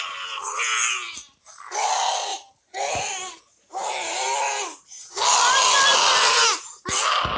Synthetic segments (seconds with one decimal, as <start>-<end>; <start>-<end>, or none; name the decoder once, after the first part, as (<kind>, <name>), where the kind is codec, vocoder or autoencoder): 2.3-2.9 (vocoder, BigVGAN v2); 5.9-6.4

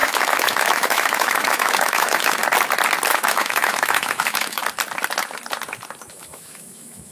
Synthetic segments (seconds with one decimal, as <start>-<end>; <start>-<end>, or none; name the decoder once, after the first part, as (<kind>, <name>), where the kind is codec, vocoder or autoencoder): 0.0-2.4 (autoencoder, DAC-VAE); 3.1-4.6; 6.1-7.1

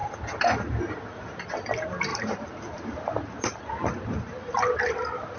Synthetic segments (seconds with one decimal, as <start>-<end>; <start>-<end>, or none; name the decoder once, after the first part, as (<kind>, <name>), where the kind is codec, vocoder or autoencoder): 2.1-3.6 (vocoder, BigVGAN v2)

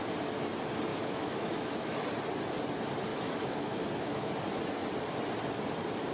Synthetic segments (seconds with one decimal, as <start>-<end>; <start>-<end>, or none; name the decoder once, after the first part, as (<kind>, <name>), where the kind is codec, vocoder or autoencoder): 0.9-2.0 (autoencoder, DAC-VAE); 3.1-4.3